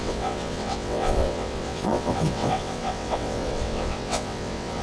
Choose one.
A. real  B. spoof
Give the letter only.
B